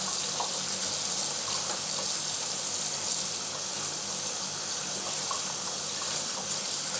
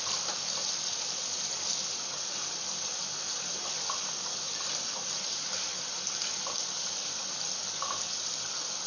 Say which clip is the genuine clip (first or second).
first